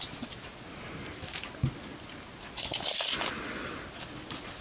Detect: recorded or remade recorded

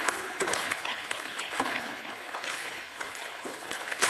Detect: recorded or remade remade